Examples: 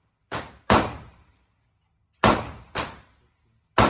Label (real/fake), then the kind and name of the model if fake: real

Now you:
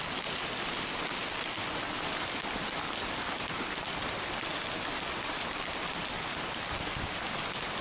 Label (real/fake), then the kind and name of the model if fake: real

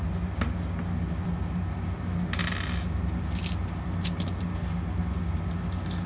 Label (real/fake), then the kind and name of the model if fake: real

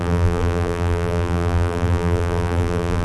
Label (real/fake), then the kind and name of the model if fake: fake, vocoder, BigVGAN v2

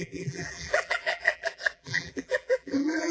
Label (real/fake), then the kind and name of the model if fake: fake, vocoder, BigVGAN v2